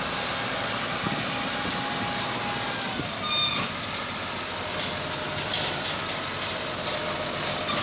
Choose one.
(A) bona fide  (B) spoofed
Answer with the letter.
A